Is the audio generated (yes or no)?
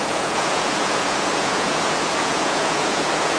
yes